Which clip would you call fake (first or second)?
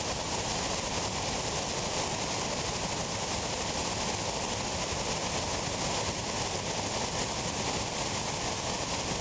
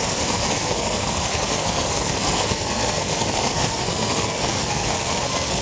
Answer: second